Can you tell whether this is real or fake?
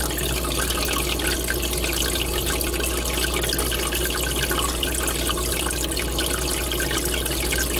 real